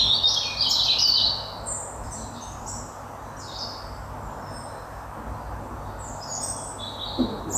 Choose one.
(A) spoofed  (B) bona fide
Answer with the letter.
B